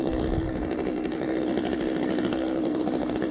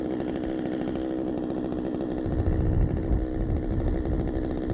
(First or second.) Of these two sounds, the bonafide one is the second